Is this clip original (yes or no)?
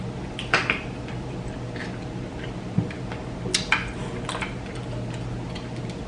yes